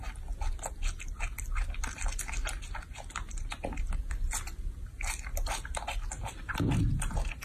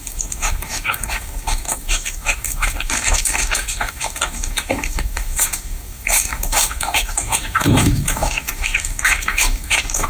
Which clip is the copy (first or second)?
second